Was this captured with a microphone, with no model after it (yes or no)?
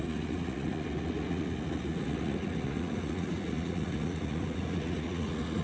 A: no